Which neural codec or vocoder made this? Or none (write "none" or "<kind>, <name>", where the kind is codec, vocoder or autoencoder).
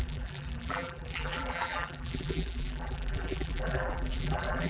vocoder, BigVGAN v2